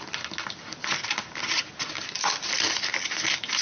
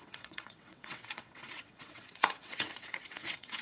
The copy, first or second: second